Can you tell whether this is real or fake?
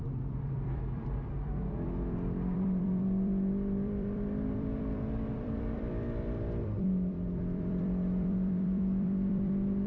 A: fake